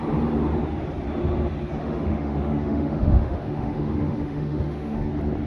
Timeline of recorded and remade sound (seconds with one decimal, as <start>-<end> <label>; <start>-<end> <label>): 0.0-1.8 recorded; 1.8-5.1 remade; 5.1-5.5 recorded